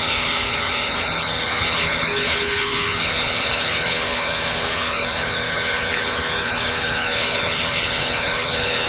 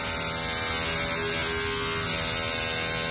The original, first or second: second